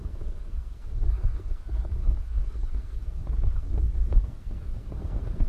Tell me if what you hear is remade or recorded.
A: remade